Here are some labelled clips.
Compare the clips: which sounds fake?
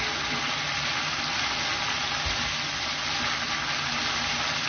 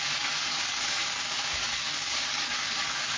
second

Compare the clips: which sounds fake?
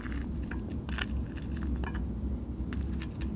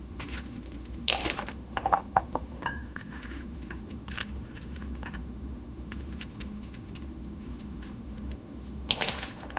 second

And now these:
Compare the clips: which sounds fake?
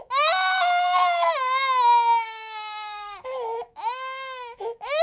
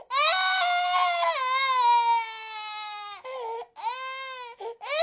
first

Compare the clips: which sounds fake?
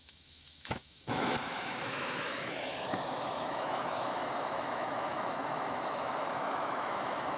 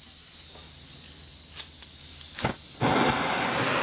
first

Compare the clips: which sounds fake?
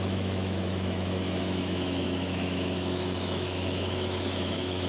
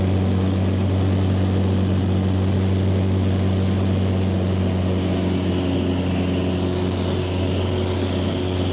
first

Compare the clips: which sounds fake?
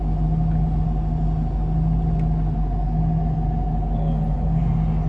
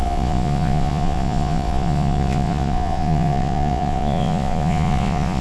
second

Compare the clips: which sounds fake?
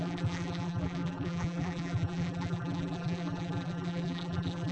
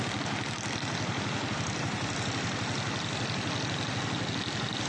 first